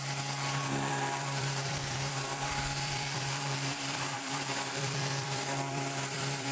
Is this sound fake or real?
fake